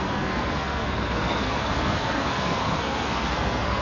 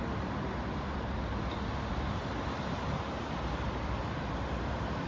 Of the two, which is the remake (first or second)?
first